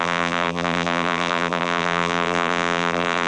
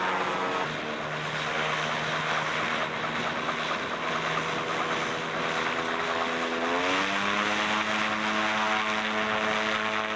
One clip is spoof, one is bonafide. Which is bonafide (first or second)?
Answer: second